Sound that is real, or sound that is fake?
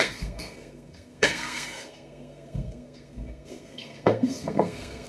fake